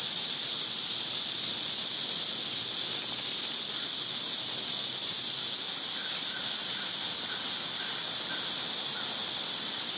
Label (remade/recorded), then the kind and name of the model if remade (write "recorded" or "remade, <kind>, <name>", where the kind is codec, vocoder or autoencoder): remade, vocoder, BigVGAN v2